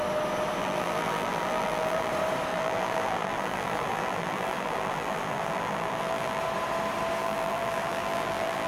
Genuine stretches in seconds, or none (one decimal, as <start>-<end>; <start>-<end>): 0.0-0.6; 2.1-2.5; 6.4-7.2